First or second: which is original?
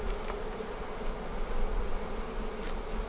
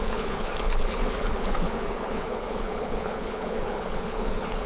first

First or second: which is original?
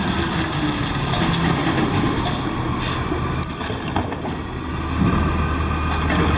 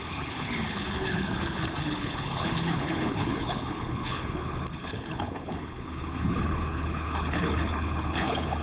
first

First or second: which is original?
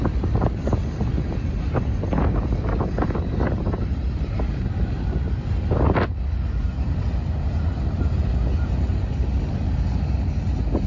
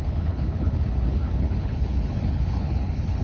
first